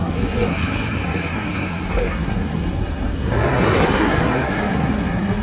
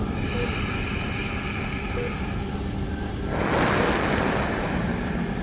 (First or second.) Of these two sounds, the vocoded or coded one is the first